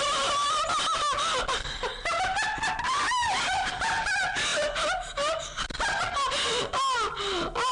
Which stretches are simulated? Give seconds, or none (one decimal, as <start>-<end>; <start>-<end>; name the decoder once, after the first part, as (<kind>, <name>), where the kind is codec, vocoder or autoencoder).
none